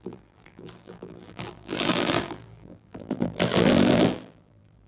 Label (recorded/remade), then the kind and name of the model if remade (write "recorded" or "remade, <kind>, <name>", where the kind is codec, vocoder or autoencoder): remade, vocoder, BigVGAN v2